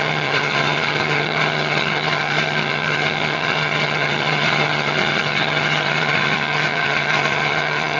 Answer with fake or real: fake